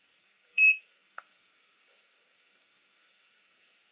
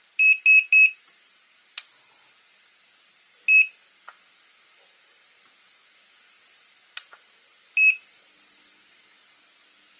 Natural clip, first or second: second